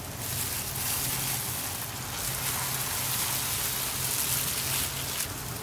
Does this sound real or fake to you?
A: real